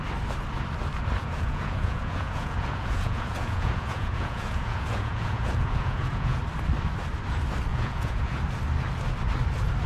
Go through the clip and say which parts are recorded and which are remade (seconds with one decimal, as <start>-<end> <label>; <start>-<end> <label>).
0.0-1.2 recorded; 1.2-6.4 remade; 6.4-7.7 recorded; 7.7-8.4 remade; 8.4-9.9 recorded